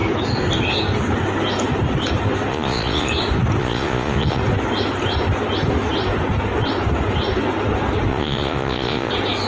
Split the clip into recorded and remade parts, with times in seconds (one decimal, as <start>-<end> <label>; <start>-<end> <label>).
0.0-2.5 recorded; 2.5-3.1 remade; 3.1-3.6 recorded; 3.6-4.4 remade; 4.4-8.1 recorded; 8.1-9.1 remade; 9.1-9.5 recorded